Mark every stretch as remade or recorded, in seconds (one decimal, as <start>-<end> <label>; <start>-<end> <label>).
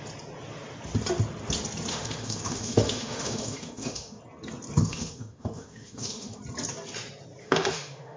0.0-1.9 recorded; 1.9-4.2 remade; 4.2-4.8 recorded; 4.8-6.4 remade; 6.4-7.4 recorded; 7.4-8.2 remade